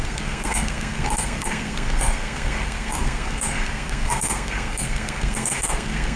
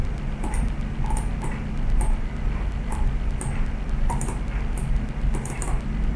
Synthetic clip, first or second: first